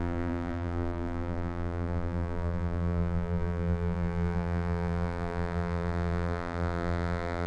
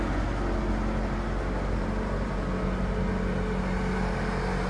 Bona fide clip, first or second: second